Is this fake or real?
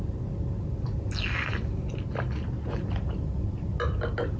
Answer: real